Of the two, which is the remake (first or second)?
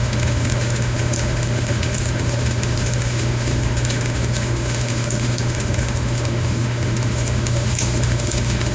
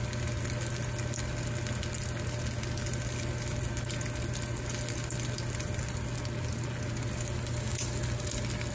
first